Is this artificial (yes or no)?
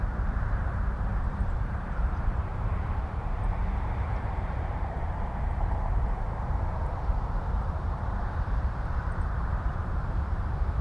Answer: yes